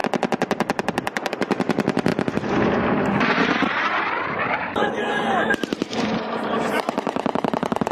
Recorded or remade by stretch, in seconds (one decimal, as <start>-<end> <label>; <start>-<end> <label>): 0.0-1.3 recorded; 1.3-2.1 remade; 2.1-2.8 recorded; 2.8-7.9 remade